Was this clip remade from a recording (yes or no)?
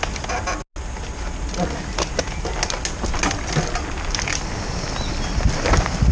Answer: no